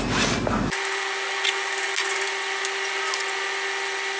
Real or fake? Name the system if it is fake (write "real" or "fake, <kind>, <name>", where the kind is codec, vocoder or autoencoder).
real